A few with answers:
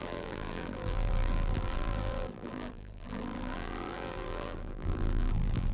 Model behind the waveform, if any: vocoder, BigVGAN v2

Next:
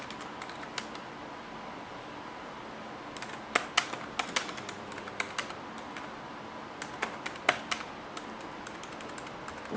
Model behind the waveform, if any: none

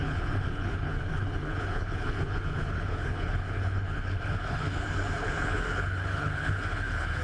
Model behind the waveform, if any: codec, HILCodec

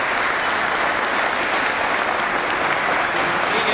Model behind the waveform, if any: none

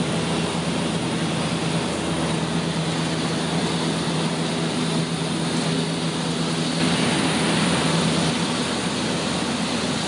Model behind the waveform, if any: none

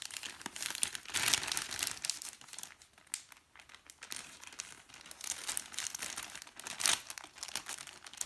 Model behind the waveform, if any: none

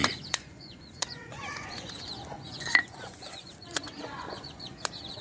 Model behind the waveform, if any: vocoder, Vocos